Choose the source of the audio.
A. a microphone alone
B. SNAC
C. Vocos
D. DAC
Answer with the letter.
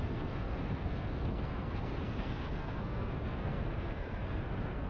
B